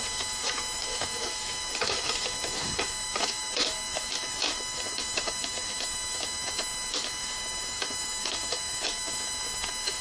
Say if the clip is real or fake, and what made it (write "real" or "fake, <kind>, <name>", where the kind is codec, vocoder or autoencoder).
fake, autoencoder, DAC-VAE